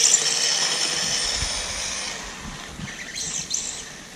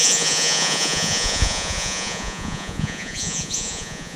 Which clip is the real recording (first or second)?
first